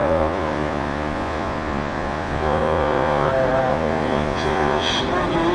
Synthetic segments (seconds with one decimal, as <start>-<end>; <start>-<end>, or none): 0.0-3.3; 3.7-4.9